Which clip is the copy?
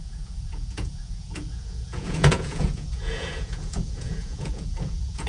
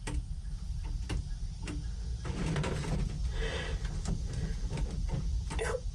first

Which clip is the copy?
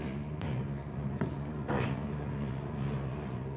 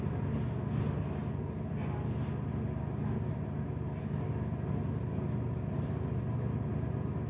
first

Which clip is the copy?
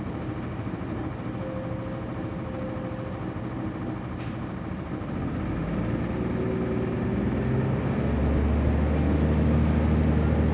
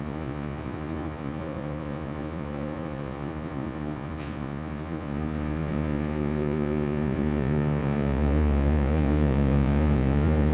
second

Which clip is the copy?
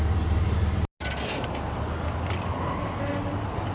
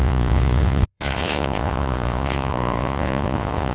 second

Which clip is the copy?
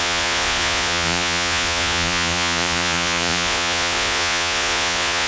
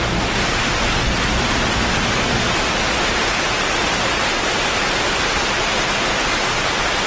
first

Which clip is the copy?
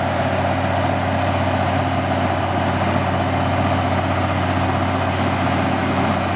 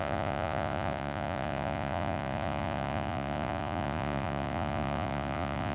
second